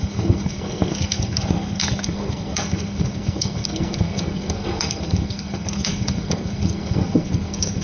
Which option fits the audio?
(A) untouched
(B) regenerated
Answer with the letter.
B